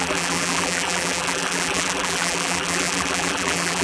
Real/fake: fake